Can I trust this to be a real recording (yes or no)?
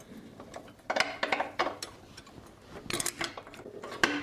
yes